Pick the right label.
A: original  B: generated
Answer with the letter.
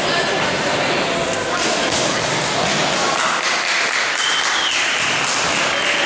A